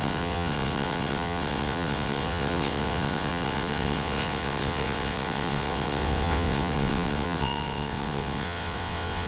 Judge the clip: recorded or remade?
remade